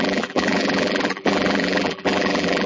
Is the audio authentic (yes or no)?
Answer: no